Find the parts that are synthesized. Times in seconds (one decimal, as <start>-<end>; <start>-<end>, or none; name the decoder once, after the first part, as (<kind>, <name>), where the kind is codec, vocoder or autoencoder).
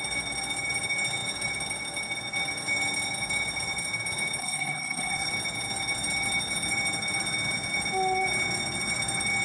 4.4-5.3 (codec, SNAC)